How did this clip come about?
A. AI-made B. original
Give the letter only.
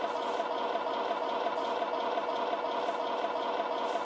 B